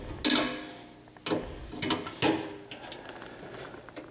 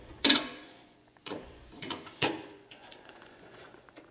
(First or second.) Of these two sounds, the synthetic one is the second